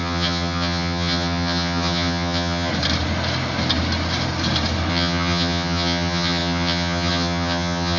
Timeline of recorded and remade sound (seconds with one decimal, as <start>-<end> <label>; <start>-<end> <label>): 0.0-2.7 remade; 2.7-4.9 recorded; 4.9-8.0 remade